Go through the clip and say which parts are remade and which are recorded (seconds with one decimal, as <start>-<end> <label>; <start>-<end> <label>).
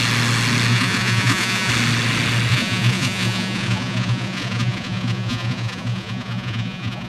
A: 0.0-0.7 recorded; 0.7-1.7 remade; 1.7-2.5 recorded; 2.5-7.1 remade